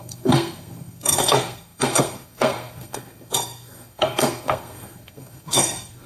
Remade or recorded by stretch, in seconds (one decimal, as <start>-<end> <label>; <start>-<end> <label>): 0.0-6.1 remade